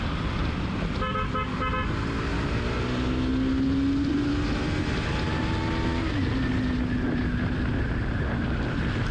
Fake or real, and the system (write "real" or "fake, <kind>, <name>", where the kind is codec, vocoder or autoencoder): real